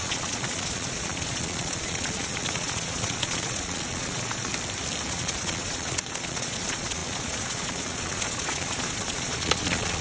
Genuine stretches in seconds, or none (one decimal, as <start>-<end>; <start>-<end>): 4.5-5.1